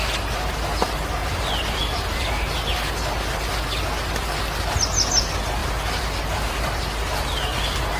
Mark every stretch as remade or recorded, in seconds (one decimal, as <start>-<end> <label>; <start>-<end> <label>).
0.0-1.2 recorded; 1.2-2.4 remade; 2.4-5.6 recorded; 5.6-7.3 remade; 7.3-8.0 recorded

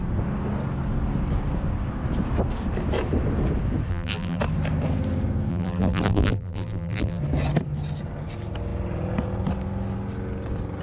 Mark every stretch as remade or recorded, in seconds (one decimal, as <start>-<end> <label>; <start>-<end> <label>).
0.0-3.9 recorded; 3.9-4.4 remade; 4.4-5.5 recorded; 5.5-7.2 remade; 7.2-10.8 recorded

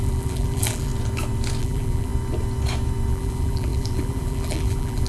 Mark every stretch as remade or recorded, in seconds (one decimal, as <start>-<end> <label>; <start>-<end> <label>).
0.0-0.9 remade; 0.9-1.6 recorded; 1.6-2.1 remade; 2.1-3.1 recorded; 3.1-5.1 remade

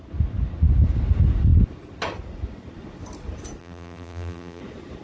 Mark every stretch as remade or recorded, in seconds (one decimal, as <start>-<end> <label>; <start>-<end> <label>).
0.0-3.6 recorded; 3.6-4.6 remade; 4.6-5.0 recorded